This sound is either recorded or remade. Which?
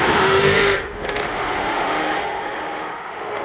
remade